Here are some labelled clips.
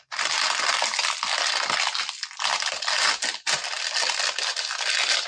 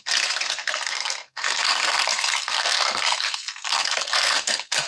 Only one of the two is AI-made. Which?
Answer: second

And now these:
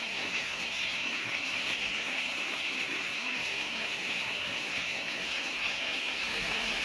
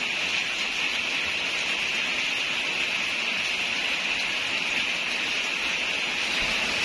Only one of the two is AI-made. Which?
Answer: first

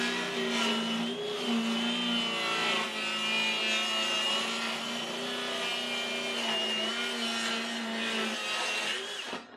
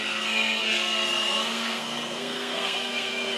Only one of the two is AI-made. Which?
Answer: second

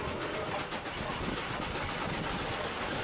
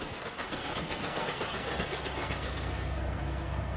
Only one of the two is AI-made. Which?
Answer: second